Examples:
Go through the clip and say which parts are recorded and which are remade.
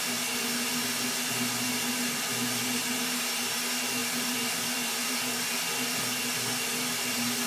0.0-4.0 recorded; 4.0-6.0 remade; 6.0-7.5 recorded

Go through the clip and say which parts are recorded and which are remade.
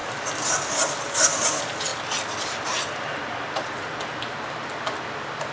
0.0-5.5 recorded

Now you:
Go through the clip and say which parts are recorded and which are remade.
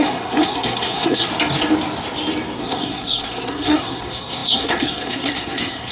0.0-1.3 remade; 1.3-2.6 recorded; 2.6-5.9 remade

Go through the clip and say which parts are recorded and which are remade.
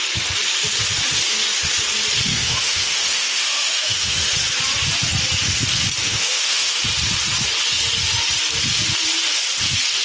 0.0-2.3 recorded; 2.3-4.3 remade; 4.3-6.0 recorded; 6.0-6.8 remade; 6.8-10.0 recorded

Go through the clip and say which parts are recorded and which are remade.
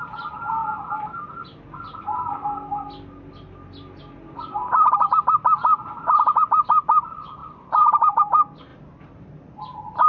0.0-10.1 recorded